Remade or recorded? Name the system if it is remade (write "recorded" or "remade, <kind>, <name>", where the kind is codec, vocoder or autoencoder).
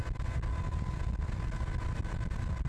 recorded